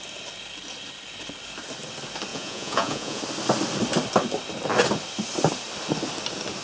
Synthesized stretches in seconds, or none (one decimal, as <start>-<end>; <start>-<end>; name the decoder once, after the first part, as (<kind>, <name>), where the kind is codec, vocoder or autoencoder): 2.3-3.2 (vocoder, Vocos)